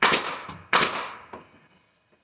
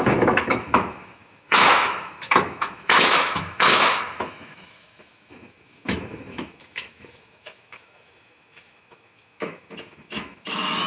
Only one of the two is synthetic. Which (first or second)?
second